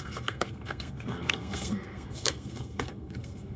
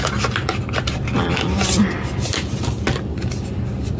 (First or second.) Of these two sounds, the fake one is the first